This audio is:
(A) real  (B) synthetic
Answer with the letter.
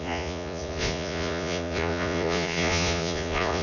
B